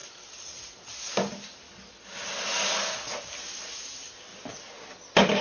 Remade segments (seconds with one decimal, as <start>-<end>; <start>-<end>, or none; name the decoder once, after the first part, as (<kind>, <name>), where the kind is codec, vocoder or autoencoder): none